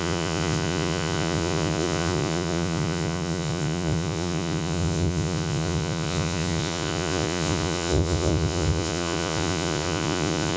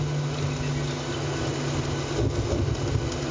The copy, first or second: first